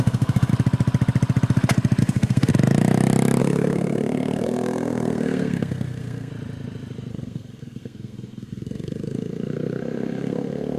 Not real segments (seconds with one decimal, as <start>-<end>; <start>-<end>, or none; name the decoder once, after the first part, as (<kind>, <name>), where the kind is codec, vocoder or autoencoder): 0.0-0.5 (codec, SNAC); 2.0-2.5; 3.4-6.3; 7.1-10.8